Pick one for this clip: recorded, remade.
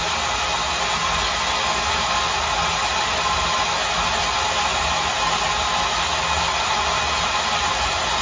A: recorded